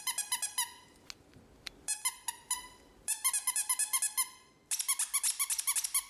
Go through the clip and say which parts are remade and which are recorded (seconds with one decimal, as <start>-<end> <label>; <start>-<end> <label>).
0.0-6.1 recorded